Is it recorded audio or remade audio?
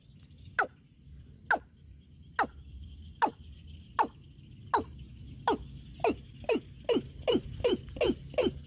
recorded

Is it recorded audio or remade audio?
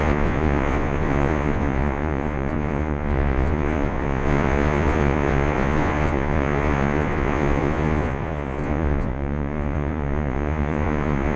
remade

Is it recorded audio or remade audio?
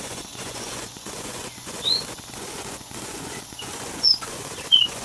remade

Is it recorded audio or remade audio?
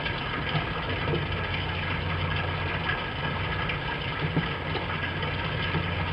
recorded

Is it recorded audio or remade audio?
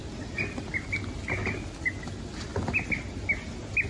recorded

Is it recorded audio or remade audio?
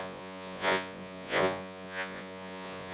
remade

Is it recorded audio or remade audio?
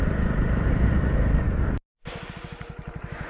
recorded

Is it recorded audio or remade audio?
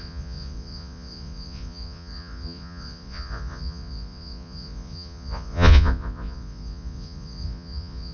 remade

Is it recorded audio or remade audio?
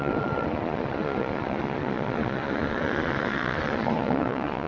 remade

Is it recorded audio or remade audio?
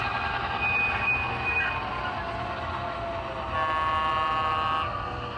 recorded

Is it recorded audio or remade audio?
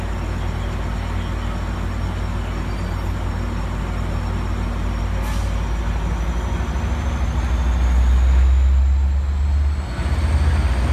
recorded